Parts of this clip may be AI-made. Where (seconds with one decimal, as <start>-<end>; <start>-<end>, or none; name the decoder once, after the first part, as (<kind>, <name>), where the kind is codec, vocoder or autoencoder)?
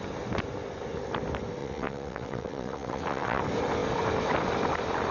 1.6-3.4 (vocoder, WaveNeXt)